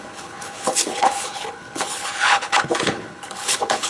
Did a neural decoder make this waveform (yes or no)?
yes